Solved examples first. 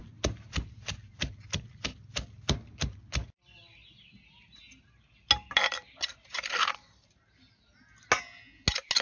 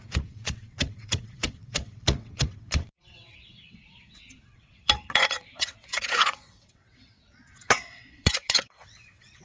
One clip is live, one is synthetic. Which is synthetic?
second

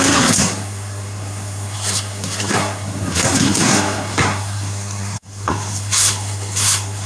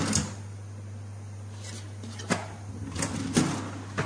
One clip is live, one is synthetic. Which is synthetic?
first